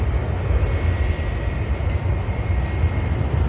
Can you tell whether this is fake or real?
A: real